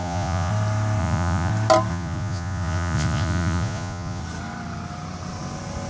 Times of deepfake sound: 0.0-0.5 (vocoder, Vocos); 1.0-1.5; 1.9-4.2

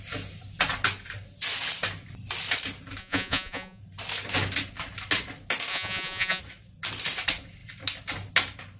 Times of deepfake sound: 3.0-3.8 (vocoder, Vocos); 5.7-6.4

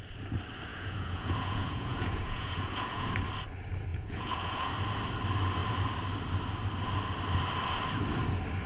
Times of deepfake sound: 0.7-3.1 (vocoder, Vocos); 3.9-4.7

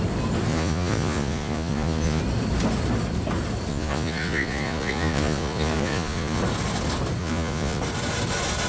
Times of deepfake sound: 0.5-2.2 (vocoder, Vocos); 3.7-6.4; 7.2-7.8

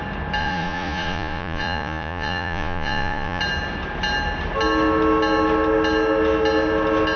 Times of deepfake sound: 0.4-3.4 (vocoder, Vocos)